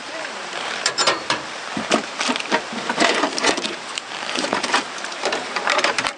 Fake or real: fake